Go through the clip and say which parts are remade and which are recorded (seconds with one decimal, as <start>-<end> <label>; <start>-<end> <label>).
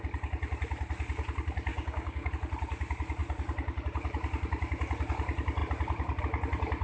0.0-1.7 recorded; 1.7-2.3 remade; 2.3-6.8 recorded